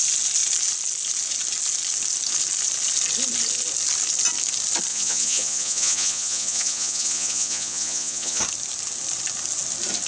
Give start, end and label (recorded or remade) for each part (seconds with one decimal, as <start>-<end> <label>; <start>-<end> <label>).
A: 0.0-4.9 recorded; 4.9-8.4 remade; 8.4-10.1 recorded